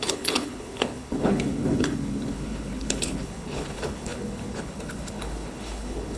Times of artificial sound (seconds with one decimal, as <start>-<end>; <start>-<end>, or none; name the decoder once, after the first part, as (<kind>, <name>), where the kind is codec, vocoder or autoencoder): 0.0-6.2 (codec, HILCodec)